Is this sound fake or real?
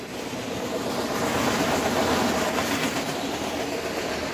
real